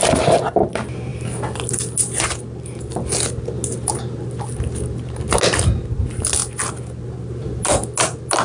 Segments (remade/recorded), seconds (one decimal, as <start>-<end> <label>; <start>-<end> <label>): 0.0-8.4 recorded